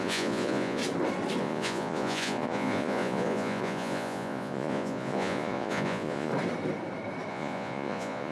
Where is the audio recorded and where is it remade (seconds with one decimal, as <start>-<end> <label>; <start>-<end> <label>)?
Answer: 0.0-0.8 remade; 0.8-1.4 recorded; 1.4-6.3 remade; 6.3-7.3 recorded; 7.3-8.3 remade